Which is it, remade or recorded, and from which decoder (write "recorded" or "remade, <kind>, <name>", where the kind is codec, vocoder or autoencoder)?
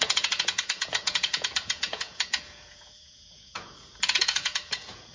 remade, vocoder, Vocos